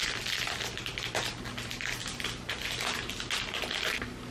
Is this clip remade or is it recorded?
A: recorded